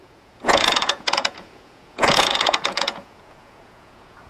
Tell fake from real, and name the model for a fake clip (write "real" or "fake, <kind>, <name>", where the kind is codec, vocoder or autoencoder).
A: fake, vocoder, Vocos